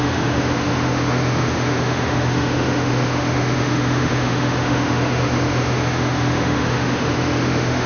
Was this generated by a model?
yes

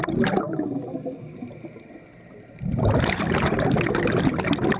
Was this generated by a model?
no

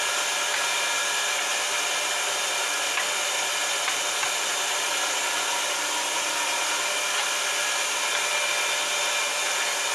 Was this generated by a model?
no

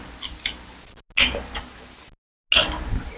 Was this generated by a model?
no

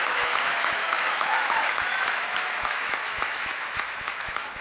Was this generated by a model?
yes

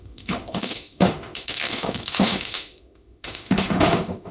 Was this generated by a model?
yes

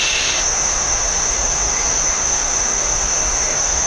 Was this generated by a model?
yes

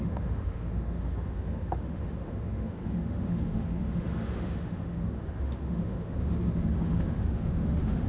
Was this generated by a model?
yes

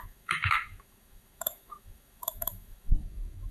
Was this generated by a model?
yes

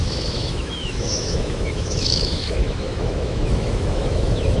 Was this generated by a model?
yes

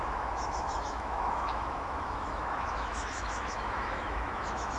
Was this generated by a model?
yes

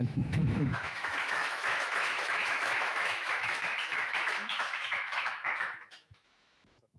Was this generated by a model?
yes